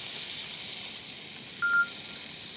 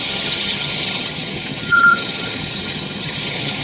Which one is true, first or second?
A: first